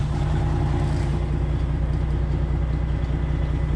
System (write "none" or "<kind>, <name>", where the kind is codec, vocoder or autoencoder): none